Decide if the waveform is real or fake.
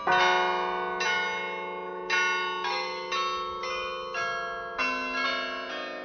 real